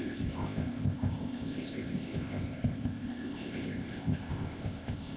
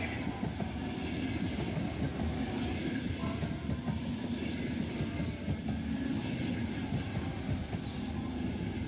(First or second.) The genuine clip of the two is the second